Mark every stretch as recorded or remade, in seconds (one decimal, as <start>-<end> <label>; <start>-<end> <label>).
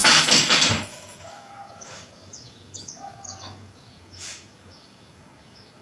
0.0-5.8 remade